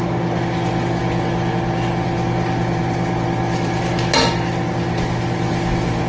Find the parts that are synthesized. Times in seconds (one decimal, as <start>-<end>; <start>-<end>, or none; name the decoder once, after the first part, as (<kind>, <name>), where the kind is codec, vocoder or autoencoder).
none